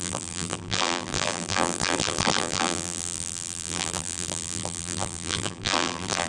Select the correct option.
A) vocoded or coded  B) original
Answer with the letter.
A